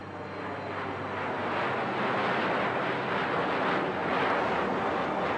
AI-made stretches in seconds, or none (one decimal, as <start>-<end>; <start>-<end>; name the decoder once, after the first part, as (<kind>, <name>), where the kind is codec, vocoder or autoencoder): none